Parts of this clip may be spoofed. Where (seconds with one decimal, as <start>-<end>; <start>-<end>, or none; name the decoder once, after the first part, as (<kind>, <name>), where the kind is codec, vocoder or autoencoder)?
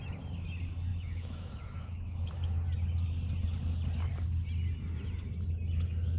0.9-2.3 (autoencoder, DAC-VAE)